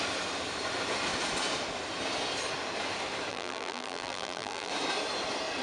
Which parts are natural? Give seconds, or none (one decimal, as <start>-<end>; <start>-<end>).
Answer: 0.0-3.3; 4.7-5.6